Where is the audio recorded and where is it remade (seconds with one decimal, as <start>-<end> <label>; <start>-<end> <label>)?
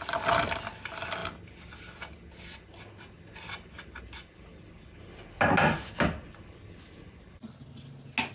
0.0-8.3 recorded